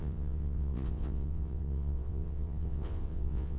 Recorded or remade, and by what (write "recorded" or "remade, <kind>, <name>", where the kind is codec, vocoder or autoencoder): remade, vocoder, WaveNeXt